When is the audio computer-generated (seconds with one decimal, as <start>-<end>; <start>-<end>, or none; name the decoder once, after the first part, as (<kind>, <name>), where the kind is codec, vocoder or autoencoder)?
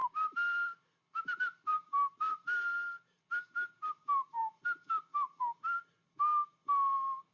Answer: 0.0-1.0 (vocoder, BigVGAN v2); 1.7-4.0